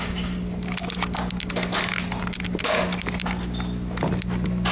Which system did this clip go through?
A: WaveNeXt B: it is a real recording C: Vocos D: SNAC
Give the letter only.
B